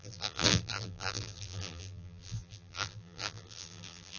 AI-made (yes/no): yes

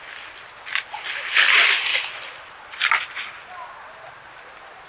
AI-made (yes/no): no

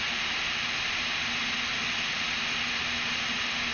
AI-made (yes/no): no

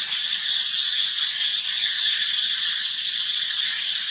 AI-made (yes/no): no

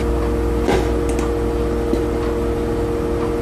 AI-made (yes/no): no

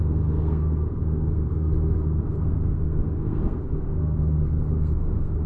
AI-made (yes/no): yes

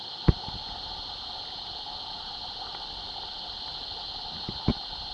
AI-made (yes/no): no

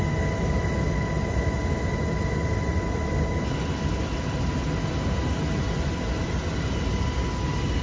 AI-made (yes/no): no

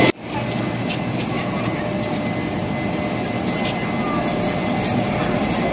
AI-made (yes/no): no